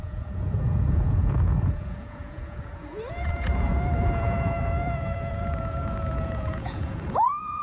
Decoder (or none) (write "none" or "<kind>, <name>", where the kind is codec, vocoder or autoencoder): vocoder, Vocos